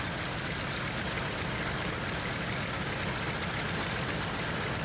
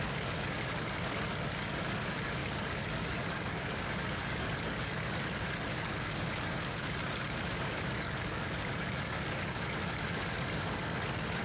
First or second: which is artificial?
second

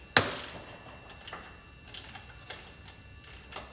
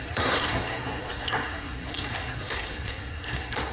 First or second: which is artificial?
second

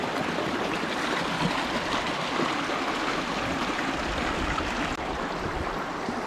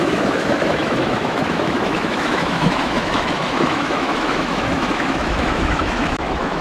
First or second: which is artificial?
second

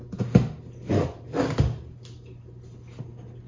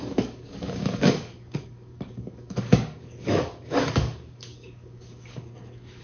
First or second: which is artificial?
second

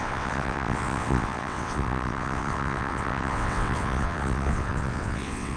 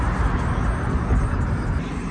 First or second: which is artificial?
first